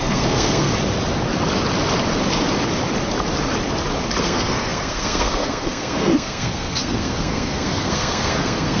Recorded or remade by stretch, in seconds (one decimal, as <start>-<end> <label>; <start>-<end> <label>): 0.0-0.7 remade; 0.7-4.2 recorded; 4.2-8.8 remade